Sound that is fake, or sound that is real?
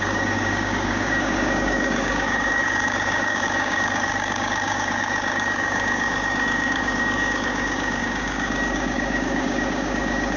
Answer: fake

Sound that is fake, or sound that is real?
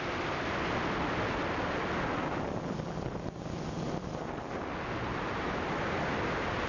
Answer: real